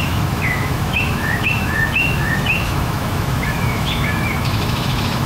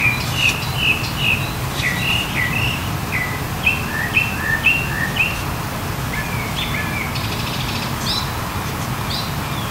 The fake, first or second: first